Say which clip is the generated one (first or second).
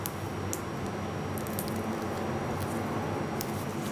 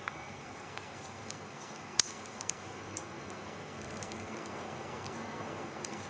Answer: second